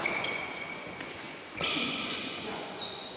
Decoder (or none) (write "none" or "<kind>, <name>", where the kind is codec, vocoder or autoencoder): vocoder, Vocos